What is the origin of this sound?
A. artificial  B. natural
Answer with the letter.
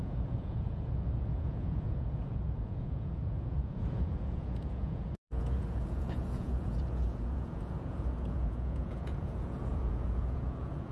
A